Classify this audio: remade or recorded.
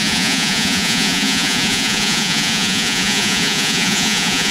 remade